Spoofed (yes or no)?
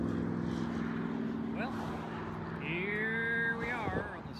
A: no